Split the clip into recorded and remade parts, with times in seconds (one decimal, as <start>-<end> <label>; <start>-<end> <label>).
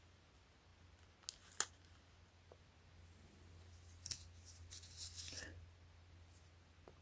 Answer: 0.0-7.0 recorded